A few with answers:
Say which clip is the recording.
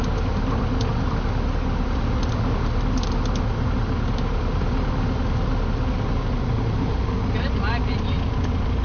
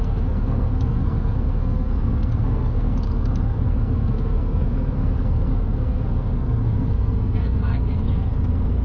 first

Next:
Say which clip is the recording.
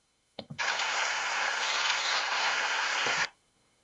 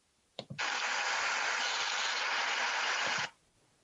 second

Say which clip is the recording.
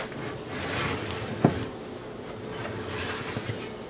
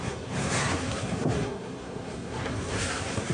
first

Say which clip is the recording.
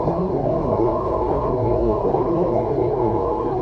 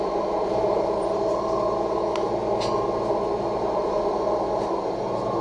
second